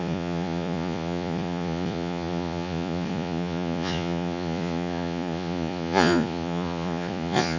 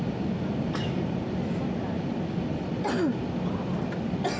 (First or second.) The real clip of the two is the second